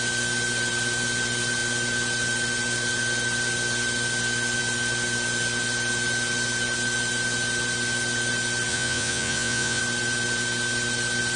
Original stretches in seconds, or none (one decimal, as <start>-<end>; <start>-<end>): 0.0-8.7; 9.8-11.4